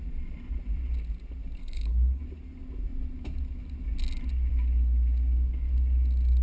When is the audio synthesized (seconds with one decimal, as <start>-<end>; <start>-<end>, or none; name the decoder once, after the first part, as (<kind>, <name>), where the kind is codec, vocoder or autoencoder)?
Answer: 1.6-2.2 (codec, HILCodec)